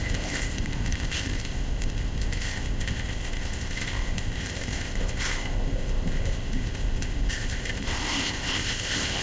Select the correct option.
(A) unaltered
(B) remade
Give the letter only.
B